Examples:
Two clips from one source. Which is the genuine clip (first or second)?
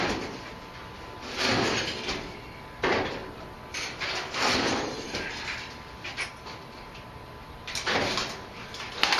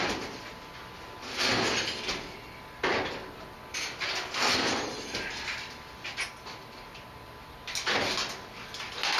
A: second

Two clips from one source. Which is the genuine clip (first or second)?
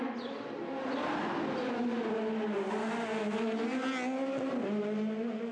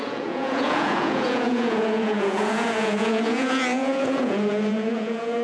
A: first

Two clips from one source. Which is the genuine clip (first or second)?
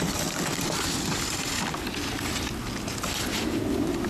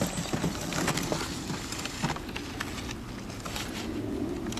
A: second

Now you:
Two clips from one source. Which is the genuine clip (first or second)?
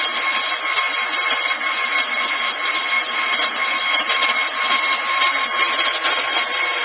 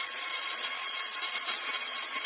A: first